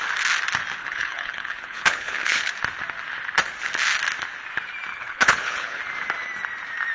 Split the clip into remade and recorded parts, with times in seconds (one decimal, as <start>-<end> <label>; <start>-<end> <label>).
0.0-0.8 recorded; 0.8-2.5 remade; 2.5-4.9 recorded; 4.9-5.8 remade; 5.8-6.9 recorded